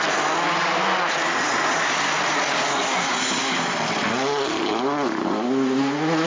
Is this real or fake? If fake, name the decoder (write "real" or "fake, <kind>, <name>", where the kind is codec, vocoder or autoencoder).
real